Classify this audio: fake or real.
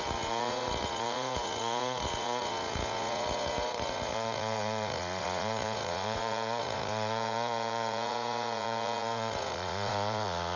fake